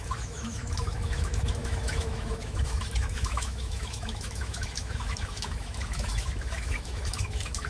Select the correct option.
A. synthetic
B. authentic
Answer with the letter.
A